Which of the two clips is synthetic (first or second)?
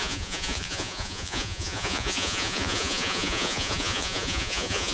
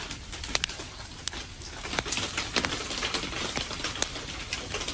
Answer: first